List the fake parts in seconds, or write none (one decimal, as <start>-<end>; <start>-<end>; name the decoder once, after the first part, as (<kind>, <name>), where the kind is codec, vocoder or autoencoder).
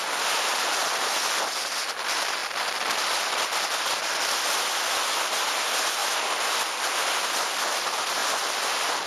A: 6.0-7.2 (vocoder, BigVGAN v2); 8.2-8.7